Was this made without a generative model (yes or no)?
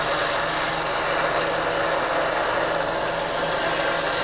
yes